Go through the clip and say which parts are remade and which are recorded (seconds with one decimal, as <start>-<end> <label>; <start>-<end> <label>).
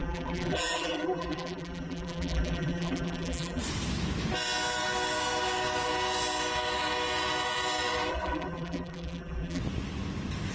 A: 0.0-3.6 remade; 3.6-8.1 recorded; 8.1-9.6 remade; 9.6-10.5 recorded